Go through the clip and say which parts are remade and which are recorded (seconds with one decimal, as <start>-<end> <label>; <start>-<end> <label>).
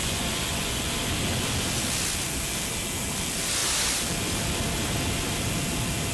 0.0-0.9 remade; 0.9-6.1 recorded